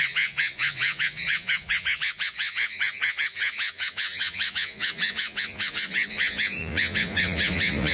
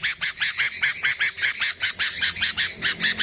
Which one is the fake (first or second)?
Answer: first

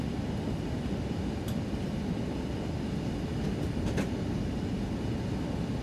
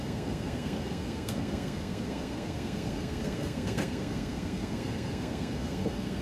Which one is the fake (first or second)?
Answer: second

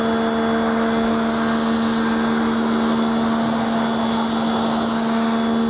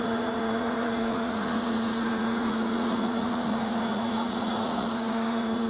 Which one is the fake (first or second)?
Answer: second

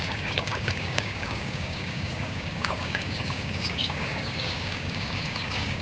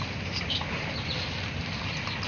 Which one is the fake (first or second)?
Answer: first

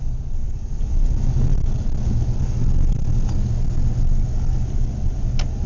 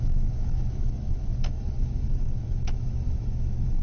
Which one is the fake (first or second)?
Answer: second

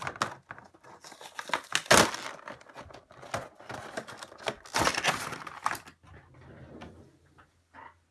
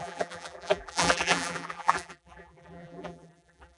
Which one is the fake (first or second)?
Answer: second